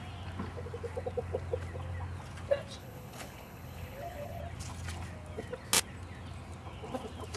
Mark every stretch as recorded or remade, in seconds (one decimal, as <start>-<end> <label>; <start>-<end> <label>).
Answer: 0.0-2.8 recorded; 2.8-4.4 remade; 4.4-7.4 recorded